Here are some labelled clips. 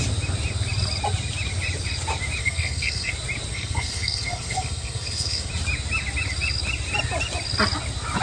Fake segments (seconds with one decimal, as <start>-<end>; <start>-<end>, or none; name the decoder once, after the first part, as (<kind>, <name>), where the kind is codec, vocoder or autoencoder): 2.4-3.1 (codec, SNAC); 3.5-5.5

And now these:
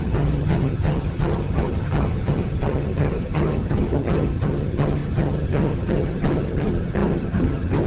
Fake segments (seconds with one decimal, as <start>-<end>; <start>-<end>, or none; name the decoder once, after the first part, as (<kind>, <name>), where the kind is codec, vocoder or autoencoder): 0.0-7.9 (vocoder, HiFi-GAN)

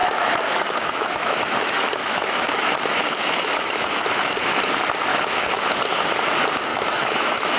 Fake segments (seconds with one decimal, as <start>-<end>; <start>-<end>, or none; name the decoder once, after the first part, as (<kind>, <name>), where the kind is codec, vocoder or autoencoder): 0.0-4.6 (autoencoder, DAC-VAE); 5.1-5.7; 6.7-7.6